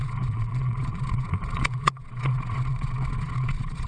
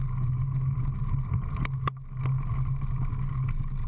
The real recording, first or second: second